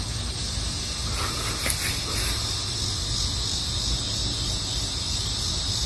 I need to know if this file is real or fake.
real